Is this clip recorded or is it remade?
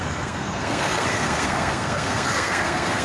remade